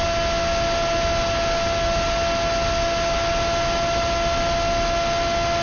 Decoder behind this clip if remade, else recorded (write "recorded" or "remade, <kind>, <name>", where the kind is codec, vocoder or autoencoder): recorded